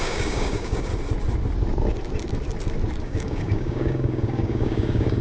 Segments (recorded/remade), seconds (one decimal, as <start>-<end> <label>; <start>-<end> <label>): 0.0-0.9 remade; 0.9-3.0 recorded; 3.0-5.2 remade